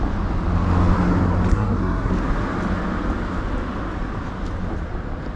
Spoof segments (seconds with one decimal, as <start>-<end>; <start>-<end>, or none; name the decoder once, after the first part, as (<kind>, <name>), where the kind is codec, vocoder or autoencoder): 1.5-2.1 (codec, SNAC)